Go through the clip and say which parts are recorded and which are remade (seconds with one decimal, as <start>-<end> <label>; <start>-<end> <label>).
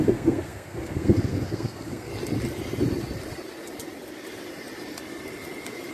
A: 0.0-2.1 remade; 2.1-5.9 recorded